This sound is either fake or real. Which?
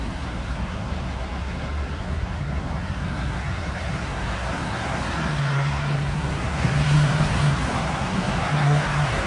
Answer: fake